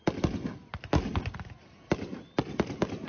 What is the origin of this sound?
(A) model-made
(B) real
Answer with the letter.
B